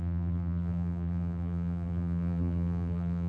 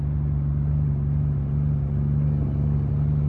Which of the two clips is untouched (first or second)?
second